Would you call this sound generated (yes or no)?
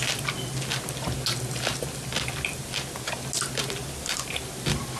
no